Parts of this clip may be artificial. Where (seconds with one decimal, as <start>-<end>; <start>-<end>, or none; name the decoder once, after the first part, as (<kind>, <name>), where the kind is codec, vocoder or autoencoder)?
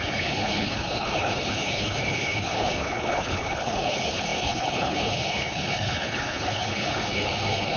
0.0-7.8 (codec, HILCodec)